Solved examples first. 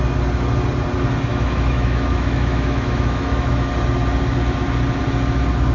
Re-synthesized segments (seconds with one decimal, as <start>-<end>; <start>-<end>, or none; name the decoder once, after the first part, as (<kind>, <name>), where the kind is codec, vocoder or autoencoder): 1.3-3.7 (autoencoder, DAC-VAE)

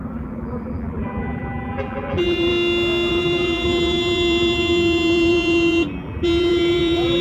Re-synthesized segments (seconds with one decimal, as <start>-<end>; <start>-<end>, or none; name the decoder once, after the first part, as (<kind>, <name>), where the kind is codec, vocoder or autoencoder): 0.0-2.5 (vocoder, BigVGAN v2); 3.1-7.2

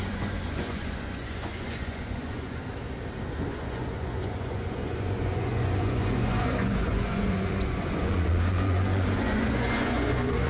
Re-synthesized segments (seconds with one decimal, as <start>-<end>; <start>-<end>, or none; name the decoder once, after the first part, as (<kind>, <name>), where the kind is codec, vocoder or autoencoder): 0.0-2.6 (vocoder, Vocos); 3.5-10.5

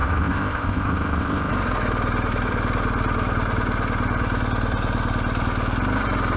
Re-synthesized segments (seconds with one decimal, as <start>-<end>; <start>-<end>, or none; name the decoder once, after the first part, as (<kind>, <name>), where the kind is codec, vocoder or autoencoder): 0.0-1.5 (codec, ZipCodec)

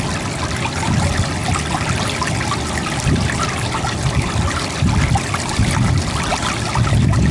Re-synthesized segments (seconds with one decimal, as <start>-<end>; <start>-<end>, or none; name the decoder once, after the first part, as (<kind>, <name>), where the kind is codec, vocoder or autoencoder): none